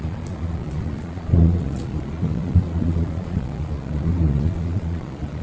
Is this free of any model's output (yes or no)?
no